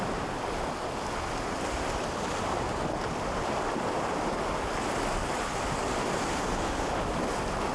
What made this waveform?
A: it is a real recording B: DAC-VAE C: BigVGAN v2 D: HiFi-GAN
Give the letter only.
A